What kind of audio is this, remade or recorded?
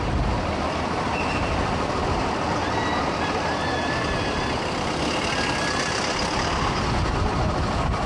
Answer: recorded